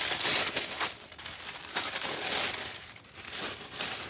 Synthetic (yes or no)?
no